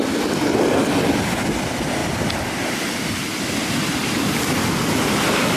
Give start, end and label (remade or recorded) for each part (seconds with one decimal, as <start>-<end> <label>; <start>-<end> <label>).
0.0-5.6 recorded